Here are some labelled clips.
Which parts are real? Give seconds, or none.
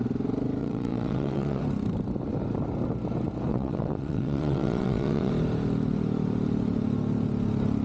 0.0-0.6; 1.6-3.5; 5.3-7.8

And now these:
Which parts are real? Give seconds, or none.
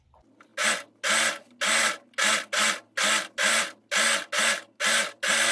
0.0-5.5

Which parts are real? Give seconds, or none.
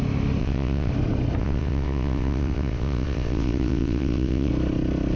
0.0-0.4; 0.9-1.4; 4.5-5.2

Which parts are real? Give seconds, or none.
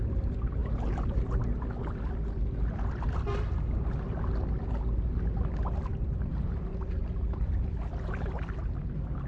0.0-9.3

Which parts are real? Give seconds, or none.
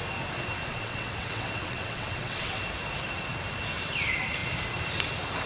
0.0-0.7; 2.6-5.5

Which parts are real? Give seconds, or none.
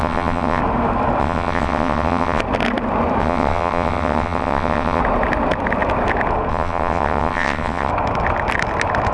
0.6-1.2; 2.4-3.2; 5.0-6.5; 7.9-9.1